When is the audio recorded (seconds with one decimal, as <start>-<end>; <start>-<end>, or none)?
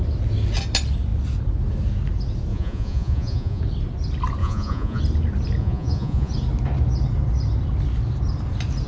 0.0-2.5; 3.6-4.4; 5.0-5.6; 6.3-8.9